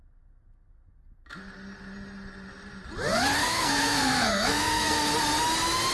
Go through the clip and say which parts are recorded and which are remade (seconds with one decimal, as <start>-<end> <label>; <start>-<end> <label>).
0.0-3.4 recorded; 3.4-5.1 remade; 5.1-5.9 recorded